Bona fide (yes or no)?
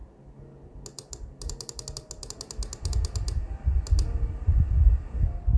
yes